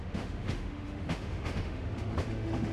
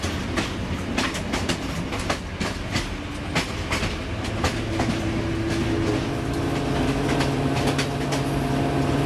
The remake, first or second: first